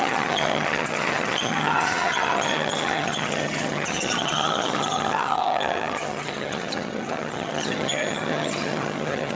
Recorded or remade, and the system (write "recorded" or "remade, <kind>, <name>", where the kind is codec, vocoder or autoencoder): remade, vocoder, HiFi-GAN